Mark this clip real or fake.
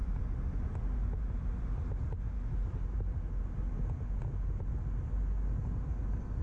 real